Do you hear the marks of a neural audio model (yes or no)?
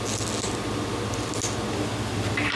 no